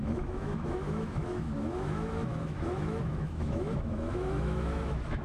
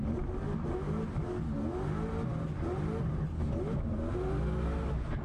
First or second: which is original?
second